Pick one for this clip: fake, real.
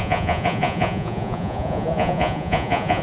fake